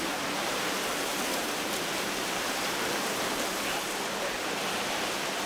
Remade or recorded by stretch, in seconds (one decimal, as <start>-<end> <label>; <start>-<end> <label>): 0.0-0.9 recorded; 0.9-3.9 remade; 3.9-5.5 recorded